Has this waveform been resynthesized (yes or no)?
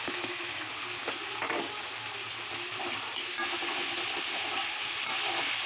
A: no